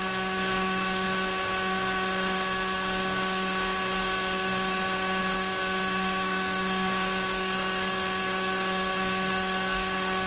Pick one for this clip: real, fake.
fake